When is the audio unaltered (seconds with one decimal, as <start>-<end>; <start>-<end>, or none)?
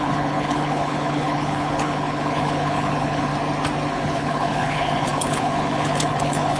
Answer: 3.3-3.9